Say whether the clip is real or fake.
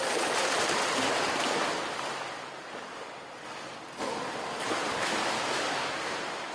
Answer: real